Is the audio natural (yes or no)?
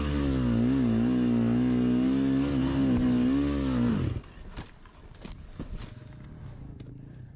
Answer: yes